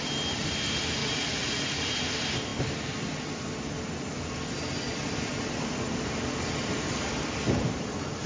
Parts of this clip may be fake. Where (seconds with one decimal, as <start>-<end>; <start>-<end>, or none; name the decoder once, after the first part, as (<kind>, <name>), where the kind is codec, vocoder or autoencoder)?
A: 1.0-1.9 (vocoder, Vocos)